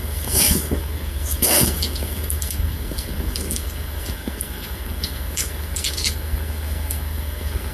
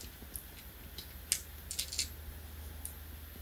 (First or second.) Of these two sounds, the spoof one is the first